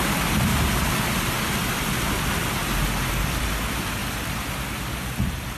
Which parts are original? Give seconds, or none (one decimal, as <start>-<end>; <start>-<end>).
0.5-3.1; 4.0-5.6